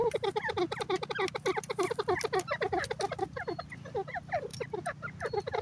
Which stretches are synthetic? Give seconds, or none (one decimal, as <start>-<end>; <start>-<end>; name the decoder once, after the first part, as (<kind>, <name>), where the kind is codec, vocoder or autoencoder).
none